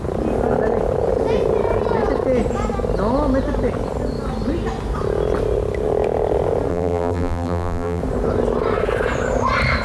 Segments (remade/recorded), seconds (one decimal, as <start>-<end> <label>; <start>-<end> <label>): 0.0-6.7 recorded; 6.7-8.0 remade; 8.0-9.8 recorded